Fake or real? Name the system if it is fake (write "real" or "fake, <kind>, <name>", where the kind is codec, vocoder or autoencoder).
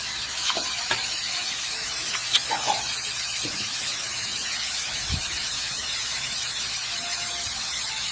fake, autoencoder, DAC-VAE